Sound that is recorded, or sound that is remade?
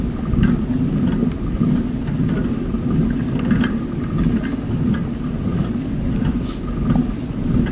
recorded